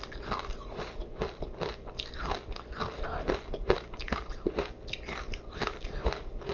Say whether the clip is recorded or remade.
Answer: recorded